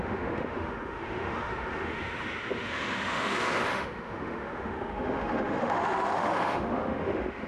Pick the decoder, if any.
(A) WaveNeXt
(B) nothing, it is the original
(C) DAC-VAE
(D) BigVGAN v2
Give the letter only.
C